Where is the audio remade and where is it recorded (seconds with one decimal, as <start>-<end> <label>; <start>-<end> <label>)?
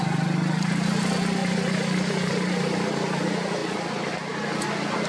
0.0-5.1 recorded